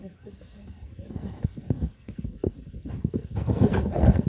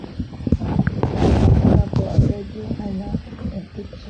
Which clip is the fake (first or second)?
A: first